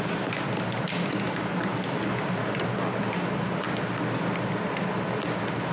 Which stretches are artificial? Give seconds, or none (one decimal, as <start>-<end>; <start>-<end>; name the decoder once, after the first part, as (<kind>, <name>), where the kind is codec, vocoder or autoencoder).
none